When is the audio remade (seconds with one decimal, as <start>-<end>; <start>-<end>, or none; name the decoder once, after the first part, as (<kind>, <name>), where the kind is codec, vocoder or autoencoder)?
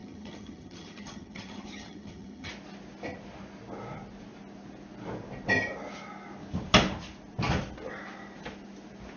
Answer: 0.0-2.5 (vocoder, HiFi-GAN)